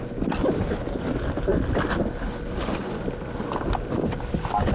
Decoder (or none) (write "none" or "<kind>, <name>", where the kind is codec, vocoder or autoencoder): none